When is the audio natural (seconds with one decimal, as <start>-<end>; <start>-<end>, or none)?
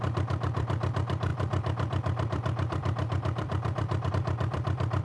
none